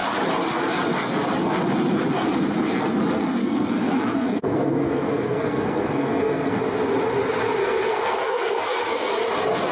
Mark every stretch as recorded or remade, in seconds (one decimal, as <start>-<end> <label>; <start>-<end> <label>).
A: 0.0-3.4 recorded; 3.4-6.6 remade; 6.6-7.6 recorded; 7.6-9.1 remade; 9.1-9.7 recorded

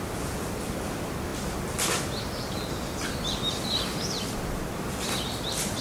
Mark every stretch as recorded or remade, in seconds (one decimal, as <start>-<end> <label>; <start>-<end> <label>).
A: 0.0-5.8 recorded

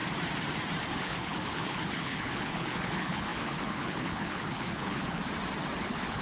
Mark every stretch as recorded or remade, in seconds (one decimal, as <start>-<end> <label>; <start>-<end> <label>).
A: 0.0-0.9 recorded; 0.9-5.2 remade; 5.2-5.8 recorded; 5.8-6.2 remade

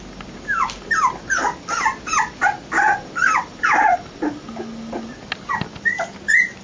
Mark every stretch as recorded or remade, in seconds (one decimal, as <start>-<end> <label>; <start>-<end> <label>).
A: 0.0-6.6 recorded

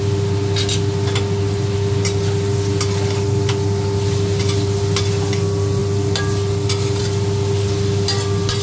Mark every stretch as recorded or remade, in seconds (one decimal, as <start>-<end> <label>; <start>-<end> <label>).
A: 0.0-8.6 recorded

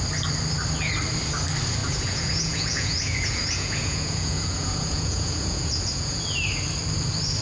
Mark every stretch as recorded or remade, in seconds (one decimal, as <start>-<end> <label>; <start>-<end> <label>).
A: 0.0-1.8 recorded; 1.8-6.2 remade; 6.2-7.4 recorded

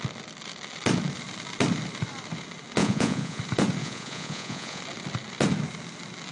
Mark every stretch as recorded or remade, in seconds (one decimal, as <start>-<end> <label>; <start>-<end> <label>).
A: 0.0-2.8 recorded; 2.8-3.4 remade; 3.4-3.8 recorded; 3.8-4.8 remade; 4.8-6.3 recorded

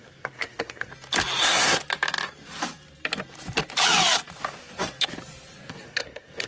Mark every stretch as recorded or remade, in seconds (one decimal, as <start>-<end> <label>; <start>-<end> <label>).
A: 0.0-0.9 remade; 0.9-1.4 recorded; 1.4-1.8 remade; 1.8-5.7 recorded; 5.7-6.5 remade